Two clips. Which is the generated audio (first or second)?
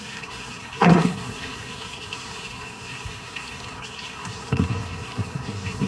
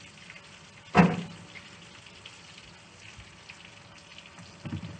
first